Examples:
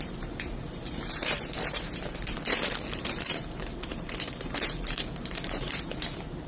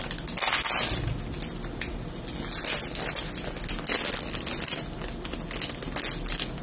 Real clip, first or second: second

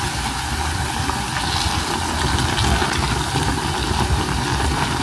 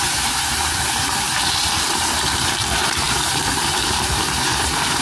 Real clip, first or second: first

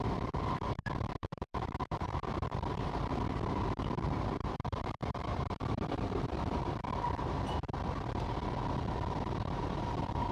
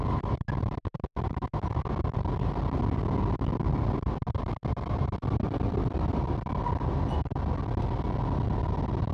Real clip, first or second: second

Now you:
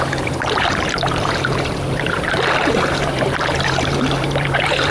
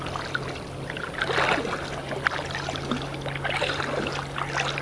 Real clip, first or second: second